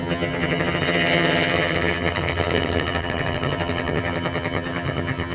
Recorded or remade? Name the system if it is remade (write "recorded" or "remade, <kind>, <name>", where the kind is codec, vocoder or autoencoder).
remade, vocoder, HiFi-GAN